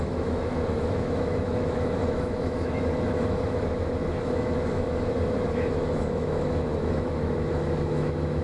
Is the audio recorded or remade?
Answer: remade